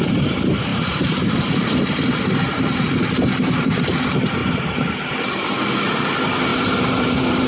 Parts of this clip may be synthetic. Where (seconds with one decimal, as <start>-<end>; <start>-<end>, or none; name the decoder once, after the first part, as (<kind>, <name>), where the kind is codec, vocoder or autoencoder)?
0.7-1.3 (vocoder, BigVGAN v2); 4.4-4.9; 6.5-7.5